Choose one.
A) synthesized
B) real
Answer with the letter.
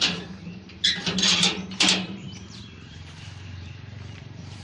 A